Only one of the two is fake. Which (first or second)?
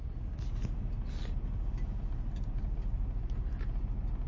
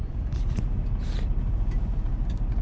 second